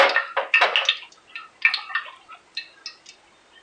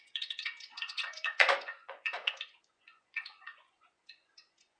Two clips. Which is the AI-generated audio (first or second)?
second